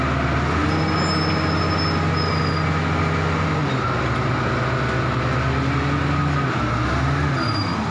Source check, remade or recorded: recorded